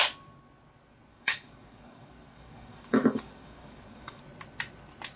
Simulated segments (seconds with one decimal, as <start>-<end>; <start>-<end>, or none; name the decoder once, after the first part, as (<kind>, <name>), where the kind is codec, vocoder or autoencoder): 1.1-4.2 (codec, DAC)